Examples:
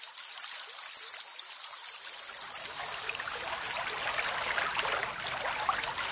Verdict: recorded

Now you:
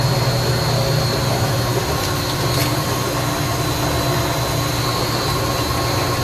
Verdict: recorded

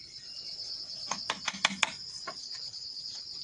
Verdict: recorded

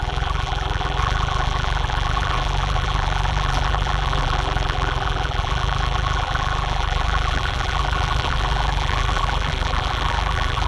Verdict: remade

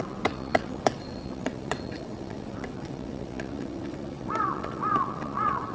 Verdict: remade